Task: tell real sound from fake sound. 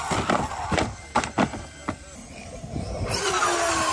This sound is real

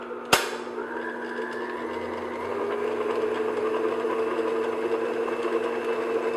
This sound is real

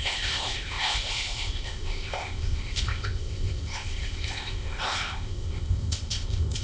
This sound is fake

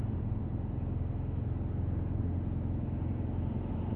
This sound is real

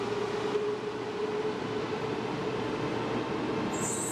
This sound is real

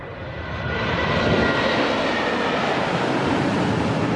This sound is real